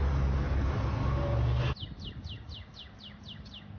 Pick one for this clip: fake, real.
real